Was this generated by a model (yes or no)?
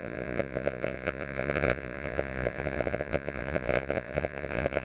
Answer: yes